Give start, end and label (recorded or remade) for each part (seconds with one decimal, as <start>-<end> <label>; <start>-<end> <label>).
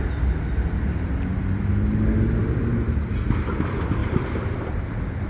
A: 0.0-2.4 recorded; 2.4-3.1 remade; 3.1-4.0 recorded; 4.0-4.8 remade; 4.8-5.3 recorded